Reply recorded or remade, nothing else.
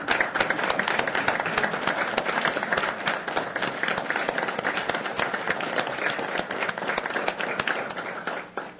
recorded